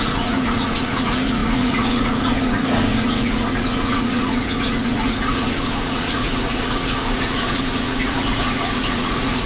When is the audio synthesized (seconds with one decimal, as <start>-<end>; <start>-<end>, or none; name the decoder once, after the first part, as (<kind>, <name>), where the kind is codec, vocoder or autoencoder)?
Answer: 0.0-9.5 (vocoder, Vocos)